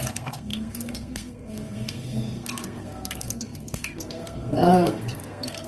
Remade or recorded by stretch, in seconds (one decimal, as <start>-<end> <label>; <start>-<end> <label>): 0.0-5.7 remade